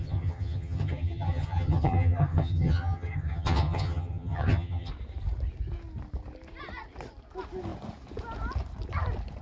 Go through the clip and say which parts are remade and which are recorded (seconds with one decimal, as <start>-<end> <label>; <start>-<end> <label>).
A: 0.0-4.9 remade; 4.9-9.4 recorded